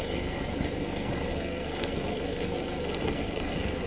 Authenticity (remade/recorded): remade